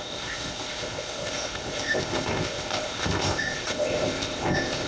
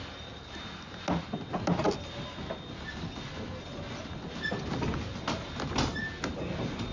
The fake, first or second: first